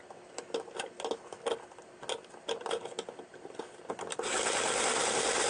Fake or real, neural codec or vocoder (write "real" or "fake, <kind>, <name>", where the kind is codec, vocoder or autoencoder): real